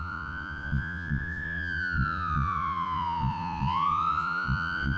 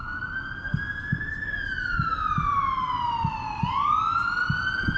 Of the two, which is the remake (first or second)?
first